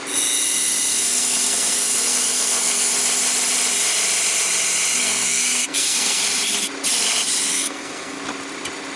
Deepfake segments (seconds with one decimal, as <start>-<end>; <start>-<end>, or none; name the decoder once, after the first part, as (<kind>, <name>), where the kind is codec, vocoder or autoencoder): 0.9-2.9 (codec, SNAC); 5.0-6.2; 7.5-8.2